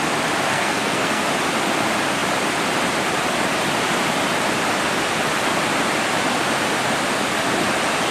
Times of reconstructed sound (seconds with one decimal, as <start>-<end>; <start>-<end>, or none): 0.5-1.2